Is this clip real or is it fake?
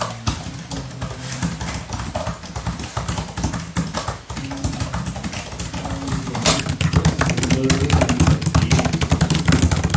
real